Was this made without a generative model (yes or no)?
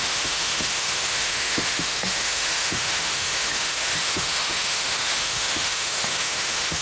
no